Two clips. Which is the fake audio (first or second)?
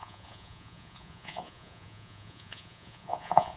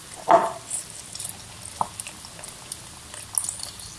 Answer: first